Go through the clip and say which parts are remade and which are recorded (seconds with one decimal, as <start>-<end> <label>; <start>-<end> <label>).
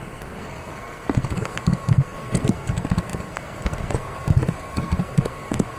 0.0-5.8 remade